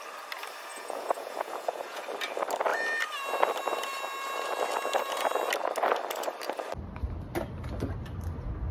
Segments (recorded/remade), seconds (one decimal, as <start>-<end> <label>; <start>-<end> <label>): 0.0-0.7 recorded; 0.7-2.0 remade; 2.0-8.7 recorded